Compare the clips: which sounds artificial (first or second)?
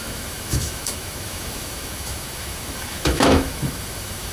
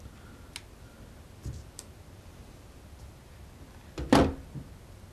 first